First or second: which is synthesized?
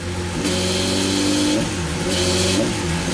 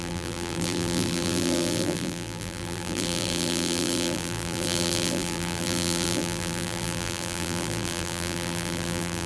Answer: second